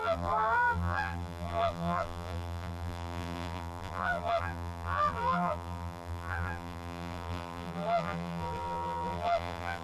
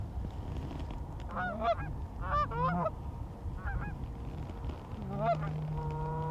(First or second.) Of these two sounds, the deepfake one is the first